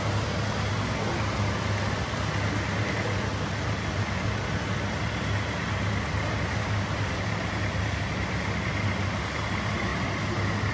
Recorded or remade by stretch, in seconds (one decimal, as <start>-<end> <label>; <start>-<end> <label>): 0.0-10.7 recorded